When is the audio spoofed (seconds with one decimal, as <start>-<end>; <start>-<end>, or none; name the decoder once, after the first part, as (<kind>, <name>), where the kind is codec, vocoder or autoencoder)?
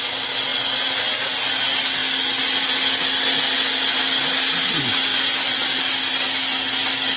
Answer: none